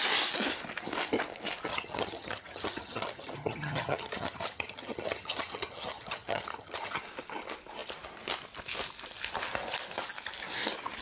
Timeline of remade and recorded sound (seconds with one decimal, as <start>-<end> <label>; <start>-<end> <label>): 0.0-1.7 recorded; 1.7-7.0 remade; 7.0-11.0 recorded